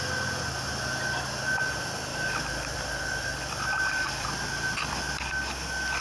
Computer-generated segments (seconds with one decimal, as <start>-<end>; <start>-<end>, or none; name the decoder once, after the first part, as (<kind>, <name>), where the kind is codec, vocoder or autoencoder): 2.1-5.3 (vocoder, BigVGAN v2)